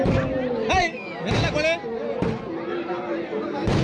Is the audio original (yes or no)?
yes